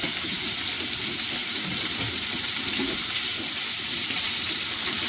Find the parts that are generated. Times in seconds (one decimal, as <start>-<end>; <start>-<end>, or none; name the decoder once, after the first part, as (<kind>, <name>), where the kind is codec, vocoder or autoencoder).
1.4-4.5 (vocoder, BigVGAN v2)